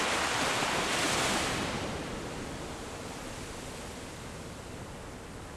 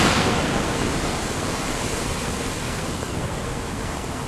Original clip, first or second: first